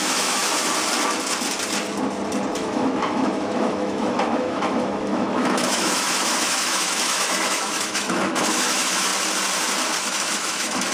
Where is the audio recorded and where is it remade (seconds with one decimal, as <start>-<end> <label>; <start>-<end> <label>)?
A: 0.0-0.4 remade; 0.4-2.6 recorded; 2.6-9.1 remade; 9.1-10.0 recorded; 10.0-10.9 remade